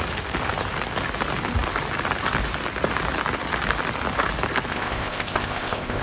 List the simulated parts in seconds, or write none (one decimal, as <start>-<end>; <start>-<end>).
4.7-6.0